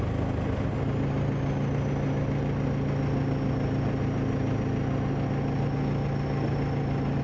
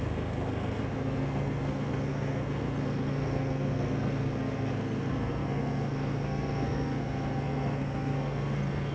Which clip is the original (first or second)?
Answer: first